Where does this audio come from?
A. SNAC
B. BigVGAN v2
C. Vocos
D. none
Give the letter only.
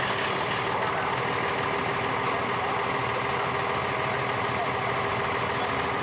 D